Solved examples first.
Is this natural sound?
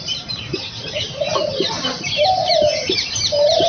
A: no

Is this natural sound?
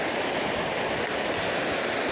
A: no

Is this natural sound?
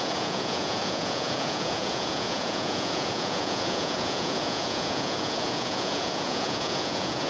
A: no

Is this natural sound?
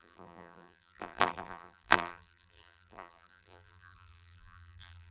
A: no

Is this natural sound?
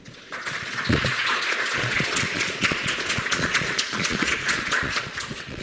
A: no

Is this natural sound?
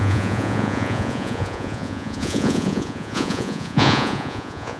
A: no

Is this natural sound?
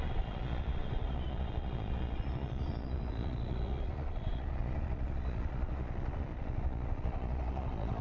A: no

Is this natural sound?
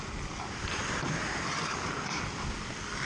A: yes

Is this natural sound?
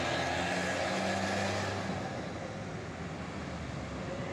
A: yes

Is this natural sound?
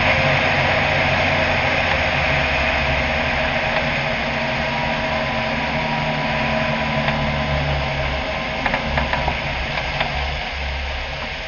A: yes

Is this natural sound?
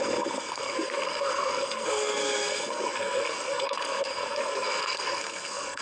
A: no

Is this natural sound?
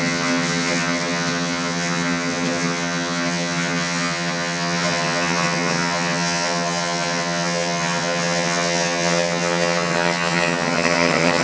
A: no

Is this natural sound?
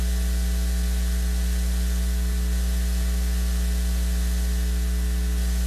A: yes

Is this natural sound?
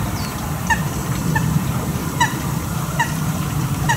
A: no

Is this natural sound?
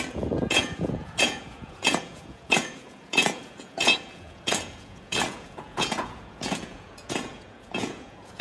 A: no